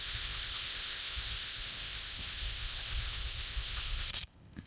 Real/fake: fake